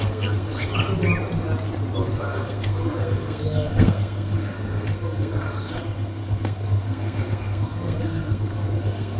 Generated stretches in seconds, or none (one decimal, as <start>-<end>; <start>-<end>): 0.0-0.7; 2.2-9.2